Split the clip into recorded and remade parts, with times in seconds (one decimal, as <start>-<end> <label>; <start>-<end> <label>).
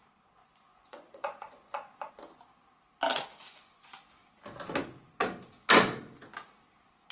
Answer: 0.0-0.4 recorded; 0.4-2.1 remade; 2.1-3.1 recorded; 3.1-3.8 remade; 3.8-7.1 recorded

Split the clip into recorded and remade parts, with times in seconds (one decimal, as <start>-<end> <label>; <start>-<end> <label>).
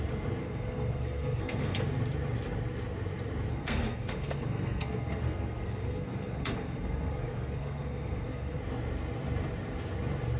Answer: 0.0-0.4 recorded; 0.4-1.8 remade; 1.8-3.5 recorded; 3.5-8.6 remade; 8.6-10.4 recorded